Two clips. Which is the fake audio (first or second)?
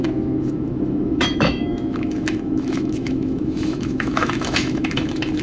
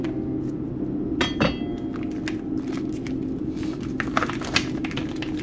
first